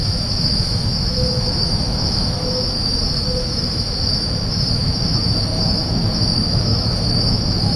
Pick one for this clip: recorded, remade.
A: remade